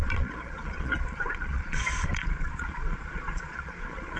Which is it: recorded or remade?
remade